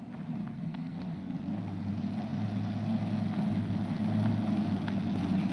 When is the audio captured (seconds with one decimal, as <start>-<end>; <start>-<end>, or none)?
0.0-0.4; 1.4-5.5

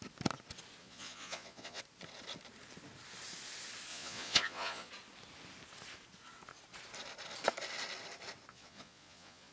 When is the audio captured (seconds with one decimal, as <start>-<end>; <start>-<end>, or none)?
0.0-0.8; 1.8-3.9; 4.9-8.5